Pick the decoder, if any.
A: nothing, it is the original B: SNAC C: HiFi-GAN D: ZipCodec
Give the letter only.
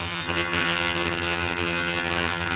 C